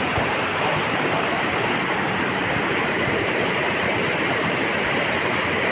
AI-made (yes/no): yes